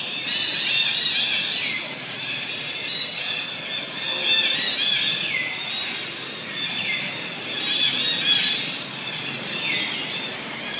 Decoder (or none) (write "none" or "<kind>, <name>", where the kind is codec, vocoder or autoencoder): none